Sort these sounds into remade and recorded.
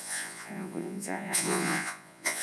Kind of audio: remade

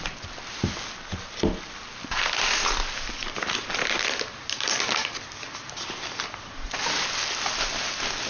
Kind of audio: recorded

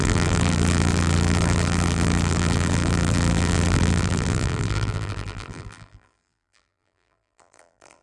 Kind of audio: remade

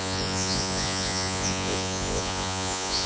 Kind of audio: remade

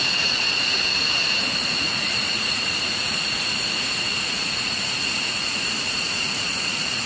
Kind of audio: remade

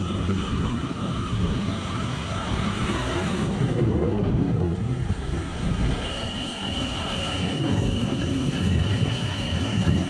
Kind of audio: remade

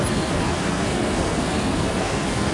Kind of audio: remade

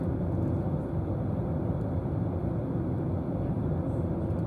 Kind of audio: recorded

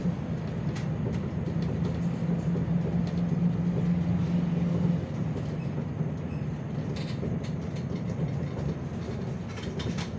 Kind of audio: recorded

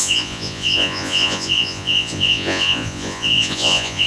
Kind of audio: remade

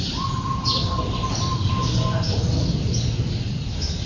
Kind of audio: recorded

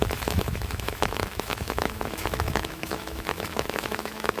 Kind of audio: remade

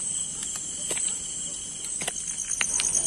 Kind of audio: recorded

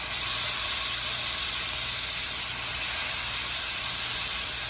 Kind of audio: recorded